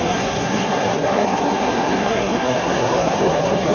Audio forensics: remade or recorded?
remade